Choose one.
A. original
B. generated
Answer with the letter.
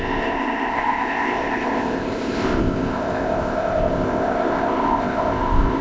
B